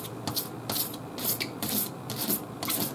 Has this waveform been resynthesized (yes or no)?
no